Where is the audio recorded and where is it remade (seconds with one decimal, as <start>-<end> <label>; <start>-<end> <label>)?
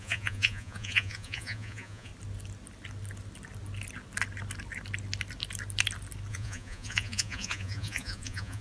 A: 0.0-2.1 remade; 2.1-6.3 recorded; 6.3-8.6 remade